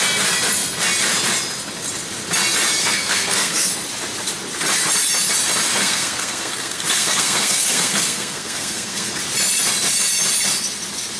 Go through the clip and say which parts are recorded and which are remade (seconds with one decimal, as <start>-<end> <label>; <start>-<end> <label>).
0.0-2.8 recorded; 2.8-3.7 remade; 3.7-5.8 recorded; 5.8-9.2 remade; 9.2-11.2 recorded